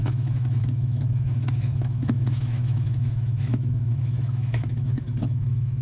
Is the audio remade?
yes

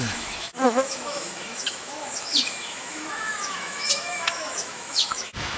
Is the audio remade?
yes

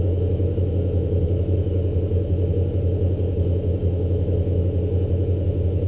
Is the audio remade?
yes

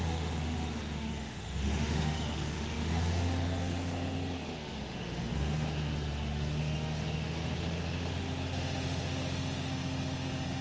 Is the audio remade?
yes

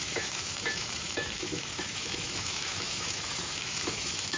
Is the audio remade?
yes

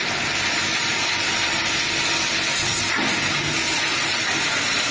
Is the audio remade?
no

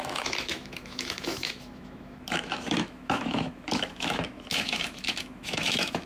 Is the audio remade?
yes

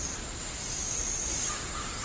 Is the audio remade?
no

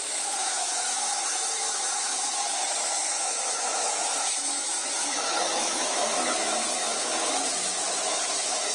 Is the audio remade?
yes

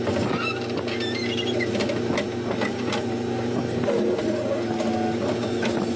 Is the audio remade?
no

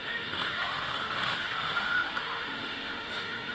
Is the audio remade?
yes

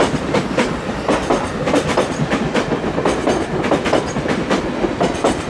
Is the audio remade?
no